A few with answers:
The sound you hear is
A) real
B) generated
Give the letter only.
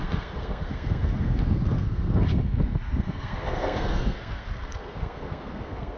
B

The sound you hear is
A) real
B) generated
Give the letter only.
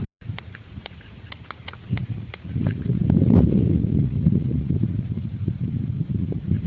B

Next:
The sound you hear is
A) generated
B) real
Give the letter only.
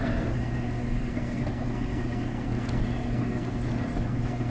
A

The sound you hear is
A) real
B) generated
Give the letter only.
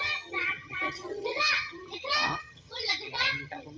B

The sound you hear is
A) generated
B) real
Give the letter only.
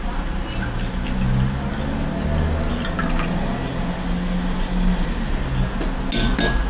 B